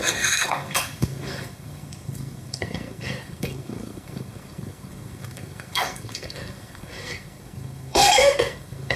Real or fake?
fake